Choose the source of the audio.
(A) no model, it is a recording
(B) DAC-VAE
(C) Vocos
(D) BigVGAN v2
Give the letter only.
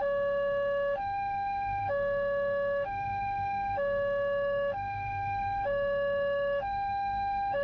B